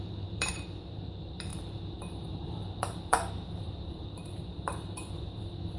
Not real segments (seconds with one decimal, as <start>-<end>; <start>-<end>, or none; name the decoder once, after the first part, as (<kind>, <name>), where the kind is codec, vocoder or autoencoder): 0.0-5.8 (vocoder, BigVGAN v2)